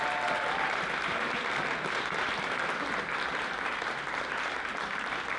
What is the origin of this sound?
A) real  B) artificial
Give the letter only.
A